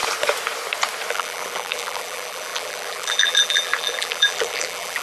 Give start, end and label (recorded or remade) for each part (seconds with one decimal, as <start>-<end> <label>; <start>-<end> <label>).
0.0-1.1 recorded; 1.1-5.0 remade